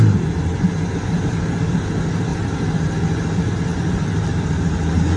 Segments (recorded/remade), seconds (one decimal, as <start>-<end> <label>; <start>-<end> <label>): 0.0-5.2 recorded